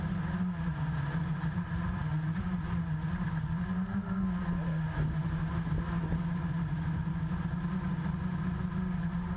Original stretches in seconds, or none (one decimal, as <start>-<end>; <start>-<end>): 0.0-9.4